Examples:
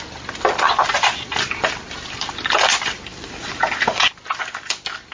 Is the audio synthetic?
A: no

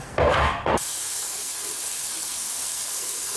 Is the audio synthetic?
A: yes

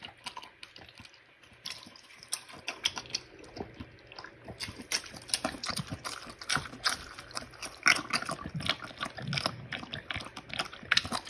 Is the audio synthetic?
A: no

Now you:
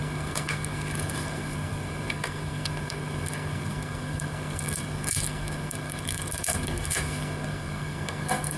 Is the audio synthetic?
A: yes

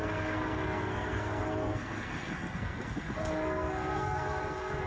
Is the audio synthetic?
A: yes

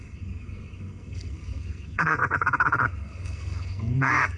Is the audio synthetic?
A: yes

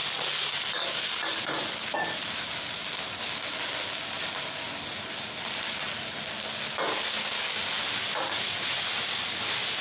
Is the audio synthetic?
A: no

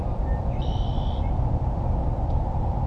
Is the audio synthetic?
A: no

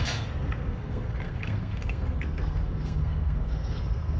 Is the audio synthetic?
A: yes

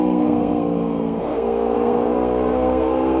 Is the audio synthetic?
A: yes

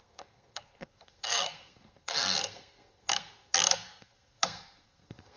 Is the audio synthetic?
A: yes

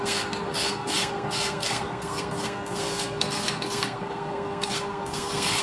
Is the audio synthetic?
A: yes